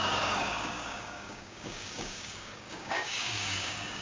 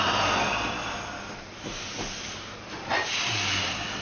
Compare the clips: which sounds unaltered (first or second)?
second